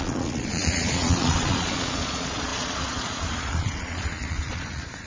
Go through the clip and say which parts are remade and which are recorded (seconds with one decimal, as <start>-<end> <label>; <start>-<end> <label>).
0.0-5.1 remade